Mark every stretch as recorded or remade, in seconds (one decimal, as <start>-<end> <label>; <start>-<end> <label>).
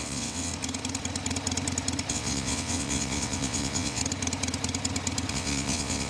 0.0-0.5 remade; 0.5-2.1 recorded; 2.1-4.0 remade; 4.0-5.3 recorded; 5.3-6.1 remade